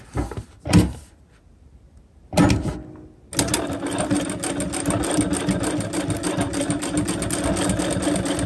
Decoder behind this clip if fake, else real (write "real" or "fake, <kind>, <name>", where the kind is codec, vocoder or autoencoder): real